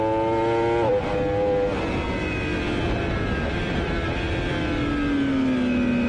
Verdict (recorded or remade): recorded